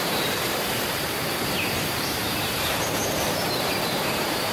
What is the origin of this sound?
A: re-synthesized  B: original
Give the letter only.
A